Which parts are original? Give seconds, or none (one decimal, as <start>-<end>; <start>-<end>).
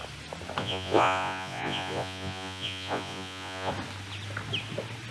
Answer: 0.0-0.6; 3.7-5.1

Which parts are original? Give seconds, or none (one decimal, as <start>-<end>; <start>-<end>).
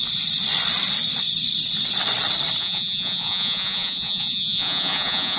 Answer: 0.0-2.6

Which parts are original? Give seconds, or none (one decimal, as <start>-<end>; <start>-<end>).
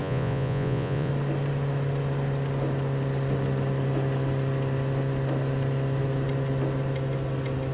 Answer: 1.1-7.7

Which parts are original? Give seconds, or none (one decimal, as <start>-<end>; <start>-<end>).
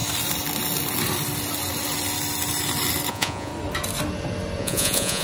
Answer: 0.0-3.1; 3.5-4.6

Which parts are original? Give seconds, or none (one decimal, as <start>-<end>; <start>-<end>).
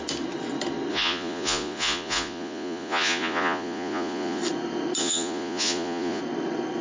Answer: 0.0-0.9; 4.4-5.0; 6.2-6.8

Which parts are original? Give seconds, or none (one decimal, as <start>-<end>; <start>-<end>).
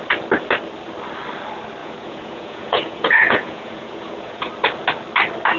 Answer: 0.0-1.8; 4.5-5.6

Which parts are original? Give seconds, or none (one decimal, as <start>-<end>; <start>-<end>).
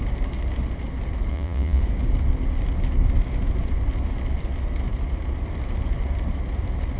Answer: 0.0-1.3; 1.8-7.0